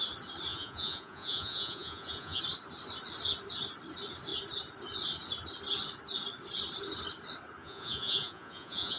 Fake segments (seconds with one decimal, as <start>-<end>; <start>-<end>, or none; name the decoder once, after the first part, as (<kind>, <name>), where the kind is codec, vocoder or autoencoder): 0.5-2.4 (vocoder, Vocos); 7.6-9.0